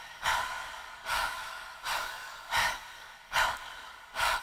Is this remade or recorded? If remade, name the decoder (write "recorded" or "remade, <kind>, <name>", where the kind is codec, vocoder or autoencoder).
remade, codec, DAC